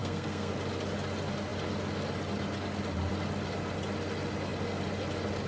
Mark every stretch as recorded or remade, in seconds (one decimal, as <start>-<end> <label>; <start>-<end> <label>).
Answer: 0.0-0.5 remade; 0.5-5.5 recorded